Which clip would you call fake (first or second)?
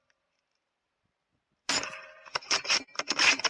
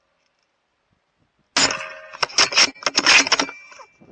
first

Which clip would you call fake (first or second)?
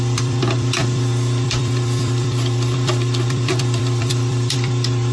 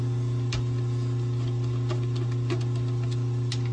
first